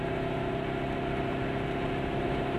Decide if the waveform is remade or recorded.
recorded